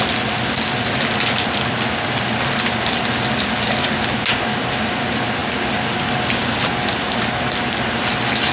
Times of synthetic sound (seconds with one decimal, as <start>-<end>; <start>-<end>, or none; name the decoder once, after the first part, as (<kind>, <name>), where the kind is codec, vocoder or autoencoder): none